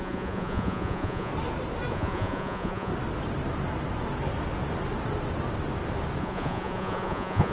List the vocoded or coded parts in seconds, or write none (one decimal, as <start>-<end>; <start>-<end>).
0.0-1.3; 1.9-2.9; 6.2-7.5